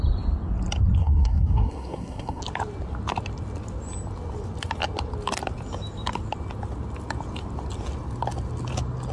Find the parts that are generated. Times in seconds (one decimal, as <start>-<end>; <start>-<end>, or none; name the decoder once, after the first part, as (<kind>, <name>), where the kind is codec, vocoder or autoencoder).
1.0-2.4 (codec, SNAC)